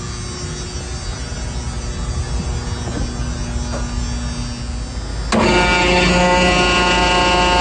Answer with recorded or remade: recorded